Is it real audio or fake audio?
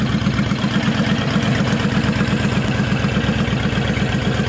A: real